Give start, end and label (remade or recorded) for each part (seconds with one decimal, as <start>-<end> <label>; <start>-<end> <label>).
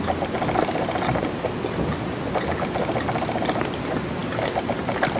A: 0.0-5.2 recorded